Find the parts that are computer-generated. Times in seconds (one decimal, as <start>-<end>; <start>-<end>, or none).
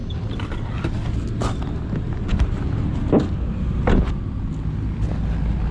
none